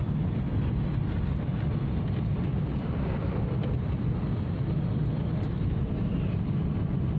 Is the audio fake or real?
fake